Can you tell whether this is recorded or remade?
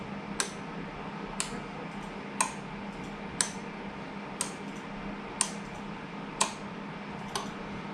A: recorded